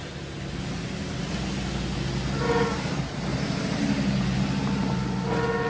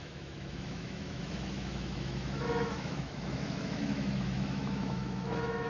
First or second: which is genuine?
first